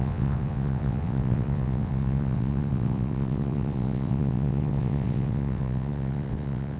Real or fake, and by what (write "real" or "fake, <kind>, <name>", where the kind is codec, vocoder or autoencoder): fake, vocoder, WaveNeXt